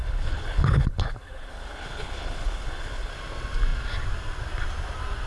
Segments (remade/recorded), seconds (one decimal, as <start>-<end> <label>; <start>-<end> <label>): 0.0-3.1 remade; 3.1-5.3 recorded